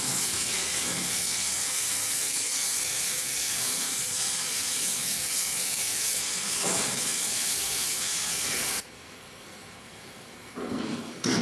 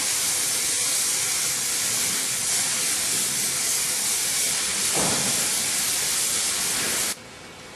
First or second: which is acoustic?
second